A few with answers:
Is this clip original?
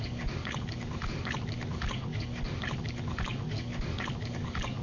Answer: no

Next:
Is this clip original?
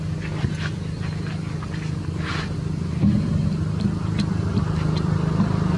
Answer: yes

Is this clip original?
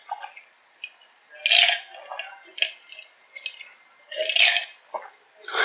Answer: yes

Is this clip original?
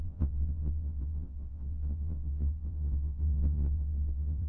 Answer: no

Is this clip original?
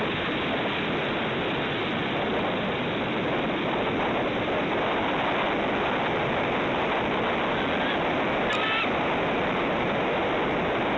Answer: yes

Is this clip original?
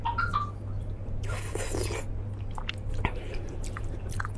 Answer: yes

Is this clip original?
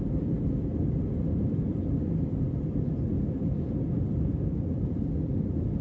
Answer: yes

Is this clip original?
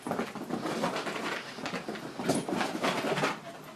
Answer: yes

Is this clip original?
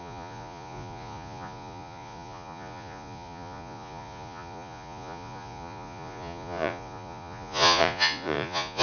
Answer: no